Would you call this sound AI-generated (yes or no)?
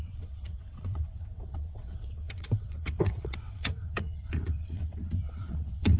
yes